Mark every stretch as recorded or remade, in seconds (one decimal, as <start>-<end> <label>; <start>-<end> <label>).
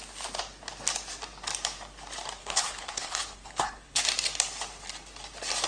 0.0-2.4 recorded; 2.4-4.0 remade; 4.0-5.7 recorded